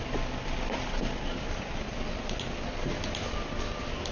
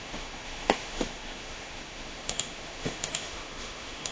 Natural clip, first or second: first